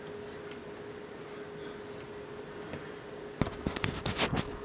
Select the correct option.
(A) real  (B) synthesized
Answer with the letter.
A